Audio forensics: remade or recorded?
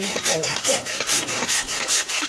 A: remade